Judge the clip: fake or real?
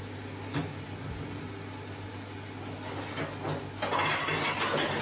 real